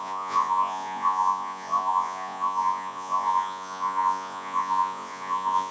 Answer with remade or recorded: remade